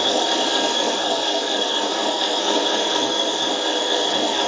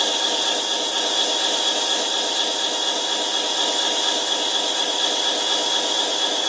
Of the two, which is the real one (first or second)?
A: second